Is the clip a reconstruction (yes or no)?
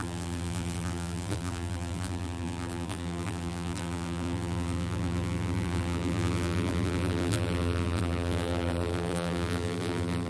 yes